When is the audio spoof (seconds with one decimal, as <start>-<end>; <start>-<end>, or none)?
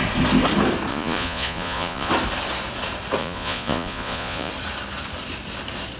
0.9-2.1; 3.2-4.5